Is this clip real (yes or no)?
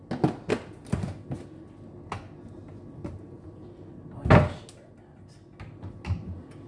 yes